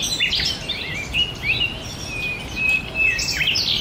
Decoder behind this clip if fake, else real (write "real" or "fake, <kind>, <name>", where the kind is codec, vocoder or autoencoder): real